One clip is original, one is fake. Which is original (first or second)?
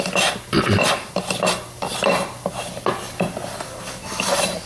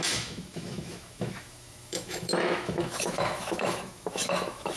first